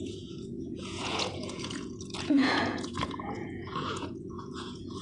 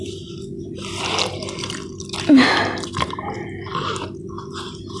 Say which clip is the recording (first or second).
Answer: second